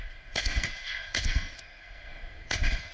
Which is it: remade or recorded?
remade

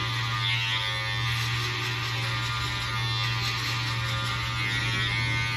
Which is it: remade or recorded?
recorded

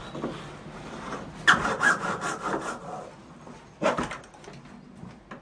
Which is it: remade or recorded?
recorded